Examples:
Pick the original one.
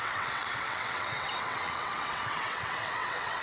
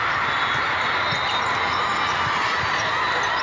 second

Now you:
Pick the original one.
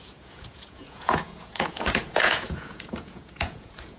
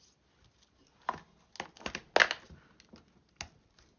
second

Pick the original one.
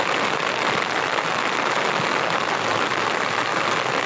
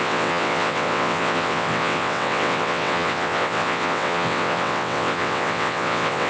first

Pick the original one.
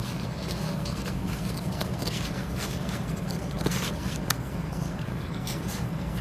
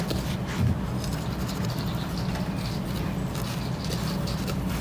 second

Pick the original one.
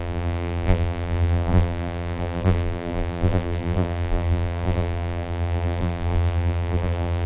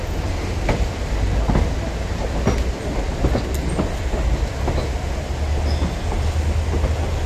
second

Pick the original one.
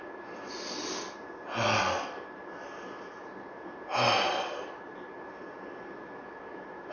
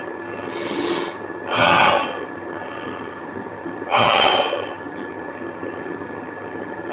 first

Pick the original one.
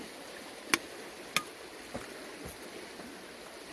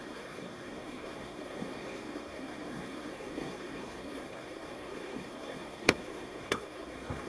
first